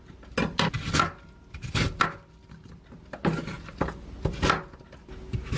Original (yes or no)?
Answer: yes